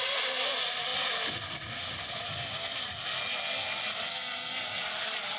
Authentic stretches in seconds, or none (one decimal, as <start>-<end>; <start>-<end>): 0.0-5.4